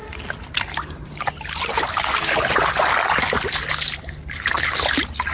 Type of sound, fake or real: real